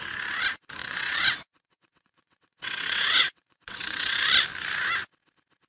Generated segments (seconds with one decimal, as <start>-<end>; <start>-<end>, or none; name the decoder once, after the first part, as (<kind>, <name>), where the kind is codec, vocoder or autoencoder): 0.8-4.2 (vocoder, WaveNeXt)